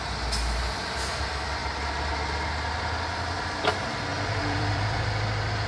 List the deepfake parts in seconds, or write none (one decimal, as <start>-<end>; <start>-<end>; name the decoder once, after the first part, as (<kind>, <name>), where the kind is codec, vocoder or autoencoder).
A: 1.6-2.8 (vocoder, BigVGAN v2); 4.1-5.7

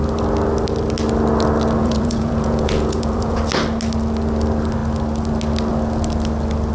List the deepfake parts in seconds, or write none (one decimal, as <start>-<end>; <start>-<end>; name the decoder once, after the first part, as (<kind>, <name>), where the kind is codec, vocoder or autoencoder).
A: 1.8-3.4 (vocoder, Vocos)